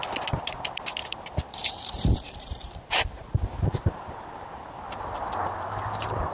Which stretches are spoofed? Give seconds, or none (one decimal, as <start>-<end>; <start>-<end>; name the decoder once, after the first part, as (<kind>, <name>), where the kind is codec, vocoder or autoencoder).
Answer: 1.0-4.0 (vocoder, BigVGAN v2)